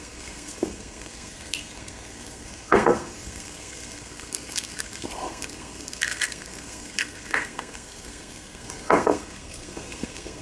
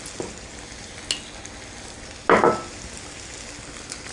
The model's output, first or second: first